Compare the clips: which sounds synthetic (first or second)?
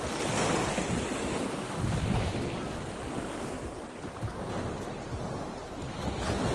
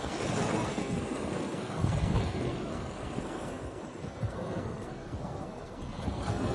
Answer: second